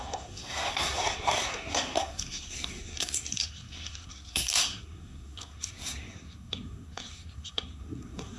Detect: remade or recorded remade